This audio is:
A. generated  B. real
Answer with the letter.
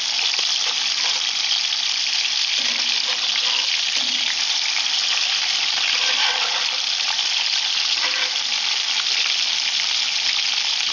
B